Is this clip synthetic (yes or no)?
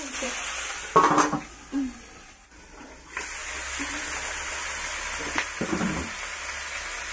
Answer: no